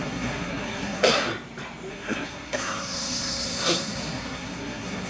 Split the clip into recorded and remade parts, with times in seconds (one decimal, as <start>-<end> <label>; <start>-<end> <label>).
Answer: 0.0-1.3 remade; 1.3-1.9 recorded; 1.9-5.1 remade